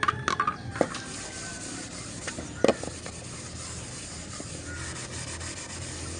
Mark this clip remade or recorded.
recorded